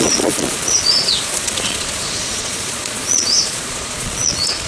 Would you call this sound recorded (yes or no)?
no